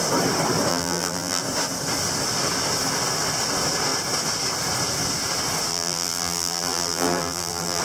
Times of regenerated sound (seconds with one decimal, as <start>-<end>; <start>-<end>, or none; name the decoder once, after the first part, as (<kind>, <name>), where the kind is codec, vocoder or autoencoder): 0.7-1.4 (vocoder, BigVGAN v2); 5.7-7.8